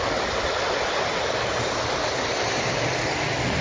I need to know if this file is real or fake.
real